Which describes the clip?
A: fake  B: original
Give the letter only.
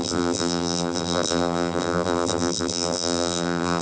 A